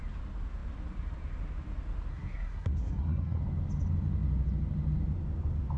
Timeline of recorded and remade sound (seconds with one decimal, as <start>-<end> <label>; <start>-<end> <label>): 0.0-2.1 recorded; 2.1-3.4 remade; 3.4-5.8 recorded

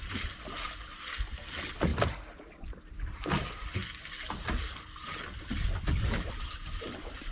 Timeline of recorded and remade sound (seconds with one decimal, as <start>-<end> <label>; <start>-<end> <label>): 0.0-7.3 recorded